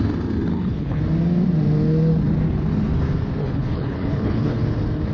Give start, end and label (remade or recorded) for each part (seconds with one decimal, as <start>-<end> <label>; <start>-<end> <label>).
0.0-0.5 recorded; 0.5-1.0 remade; 1.0-3.4 recorded; 3.4-4.6 remade; 4.6-5.1 recorded